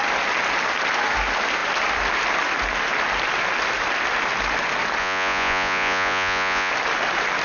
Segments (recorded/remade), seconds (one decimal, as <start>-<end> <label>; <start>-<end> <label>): 0.0-5.0 recorded; 5.0-6.7 remade; 6.7-7.4 recorded